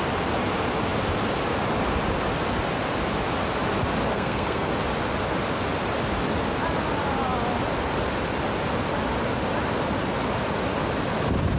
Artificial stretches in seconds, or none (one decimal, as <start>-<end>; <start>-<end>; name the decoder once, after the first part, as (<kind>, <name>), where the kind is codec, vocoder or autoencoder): 4.1-4.7 (codec, SNAC)